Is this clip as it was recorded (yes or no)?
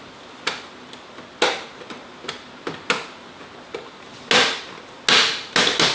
yes